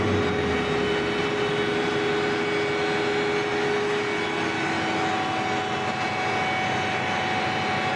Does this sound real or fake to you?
real